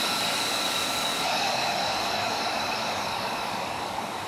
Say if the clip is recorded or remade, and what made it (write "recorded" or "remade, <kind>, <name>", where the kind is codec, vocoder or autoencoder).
remade, codec, DAC